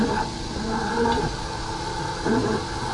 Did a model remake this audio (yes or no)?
no